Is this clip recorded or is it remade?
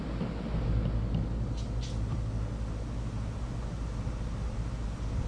recorded